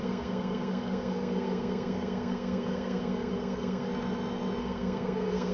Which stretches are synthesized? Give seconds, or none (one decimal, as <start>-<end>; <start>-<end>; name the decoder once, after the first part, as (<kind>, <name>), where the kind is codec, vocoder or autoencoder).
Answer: 0.0-3.9 (codec, SNAC); 4.6-5.5